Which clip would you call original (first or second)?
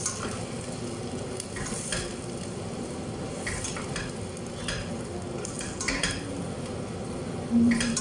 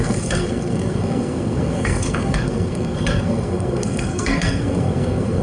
first